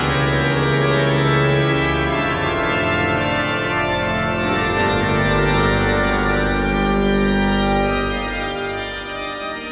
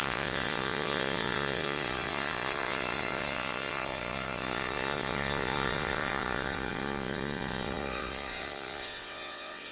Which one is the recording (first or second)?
first